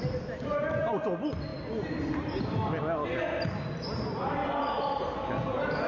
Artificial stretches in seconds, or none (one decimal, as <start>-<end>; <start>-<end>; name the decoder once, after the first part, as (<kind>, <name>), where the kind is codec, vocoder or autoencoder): none